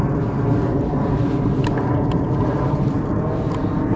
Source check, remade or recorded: recorded